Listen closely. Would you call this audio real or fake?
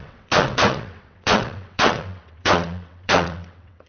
fake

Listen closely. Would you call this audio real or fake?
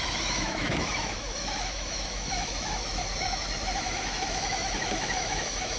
fake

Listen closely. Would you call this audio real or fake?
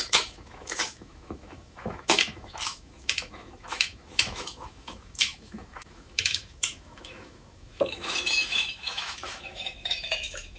fake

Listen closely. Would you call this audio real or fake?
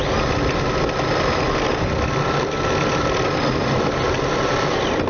real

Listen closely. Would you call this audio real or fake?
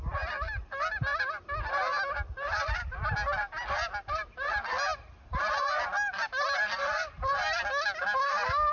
real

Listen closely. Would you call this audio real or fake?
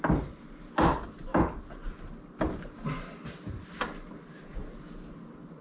real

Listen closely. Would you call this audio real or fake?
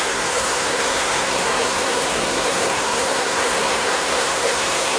fake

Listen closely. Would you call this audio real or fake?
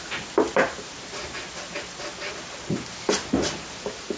real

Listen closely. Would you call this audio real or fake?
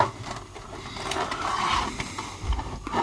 real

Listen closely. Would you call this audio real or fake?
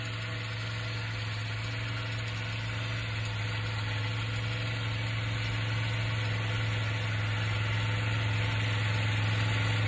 real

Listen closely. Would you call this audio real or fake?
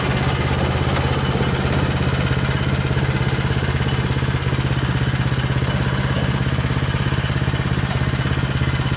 real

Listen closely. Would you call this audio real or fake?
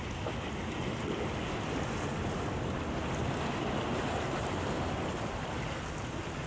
real